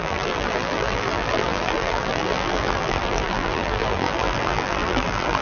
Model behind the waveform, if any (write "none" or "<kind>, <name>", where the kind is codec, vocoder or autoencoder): vocoder, BigVGAN v2